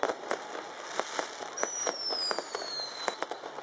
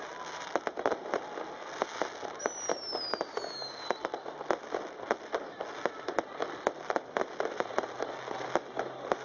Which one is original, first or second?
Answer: second